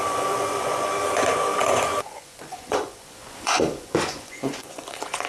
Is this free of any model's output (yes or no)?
no